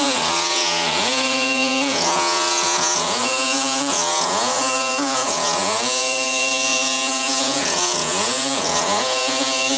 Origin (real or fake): fake